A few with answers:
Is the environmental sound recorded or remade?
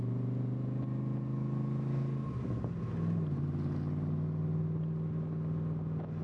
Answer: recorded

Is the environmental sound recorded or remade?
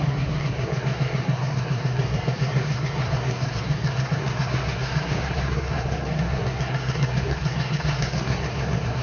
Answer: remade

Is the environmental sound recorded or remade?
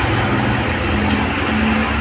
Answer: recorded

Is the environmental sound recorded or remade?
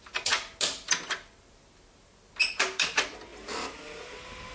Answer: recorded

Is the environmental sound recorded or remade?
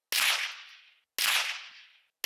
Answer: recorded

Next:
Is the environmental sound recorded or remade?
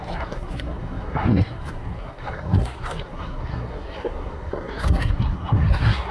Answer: remade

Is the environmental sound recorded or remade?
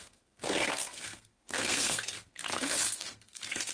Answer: remade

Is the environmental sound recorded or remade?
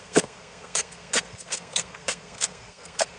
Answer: remade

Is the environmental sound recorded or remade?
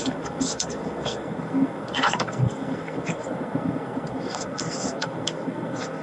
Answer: remade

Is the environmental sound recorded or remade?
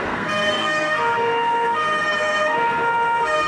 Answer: remade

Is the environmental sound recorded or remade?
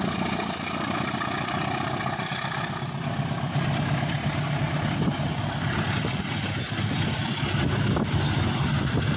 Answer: recorded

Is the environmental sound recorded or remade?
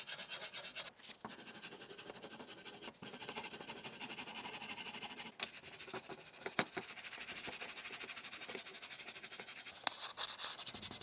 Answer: recorded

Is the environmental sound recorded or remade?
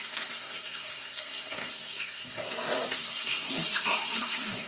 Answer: remade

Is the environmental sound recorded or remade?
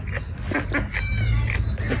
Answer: recorded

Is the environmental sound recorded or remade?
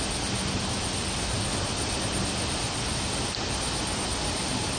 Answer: recorded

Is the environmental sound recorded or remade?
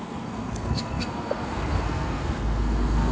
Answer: remade